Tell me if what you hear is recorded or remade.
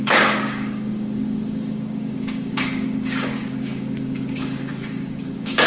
remade